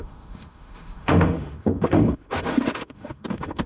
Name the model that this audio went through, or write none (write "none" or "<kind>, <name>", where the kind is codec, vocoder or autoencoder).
autoencoder, DAC-VAE